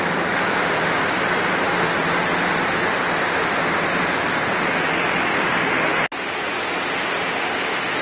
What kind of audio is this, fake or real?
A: real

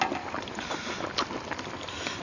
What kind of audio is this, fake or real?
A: real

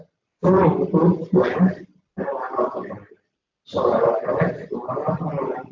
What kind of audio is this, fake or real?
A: real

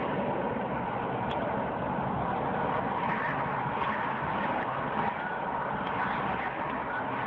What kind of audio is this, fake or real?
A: real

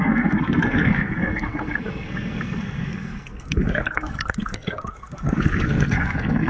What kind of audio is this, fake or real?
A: fake